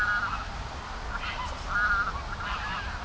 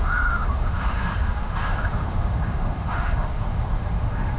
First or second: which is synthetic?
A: second